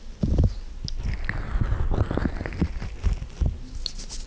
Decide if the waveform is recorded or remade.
recorded